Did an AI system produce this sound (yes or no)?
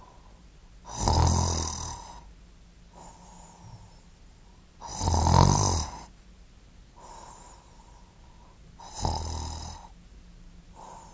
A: no